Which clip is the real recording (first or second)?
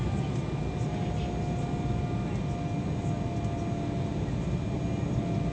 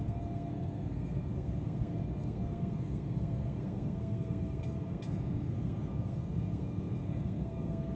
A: first